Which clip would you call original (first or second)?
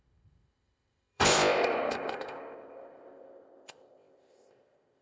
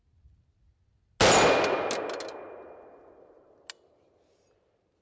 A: second